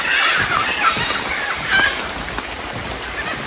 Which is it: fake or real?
real